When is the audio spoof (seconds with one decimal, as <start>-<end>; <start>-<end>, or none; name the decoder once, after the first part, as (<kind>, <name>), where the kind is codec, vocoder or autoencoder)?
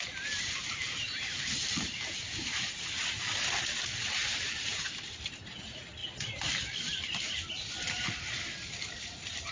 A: 0.7-3.0 (vocoder, BigVGAN v2); 4.2-4.9